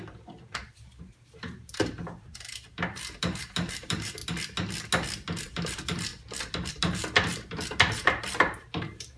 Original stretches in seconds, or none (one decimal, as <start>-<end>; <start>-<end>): 4.2-5.4; 6.1-6.7